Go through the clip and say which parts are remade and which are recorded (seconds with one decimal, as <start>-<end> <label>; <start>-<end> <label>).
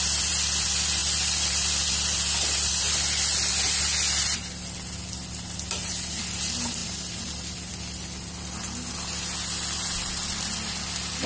0.0-11.3 recorded